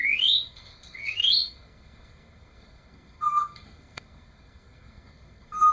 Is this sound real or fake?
fake